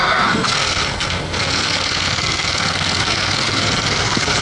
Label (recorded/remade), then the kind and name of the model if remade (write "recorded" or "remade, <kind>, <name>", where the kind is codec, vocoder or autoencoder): remade, codec, SNAC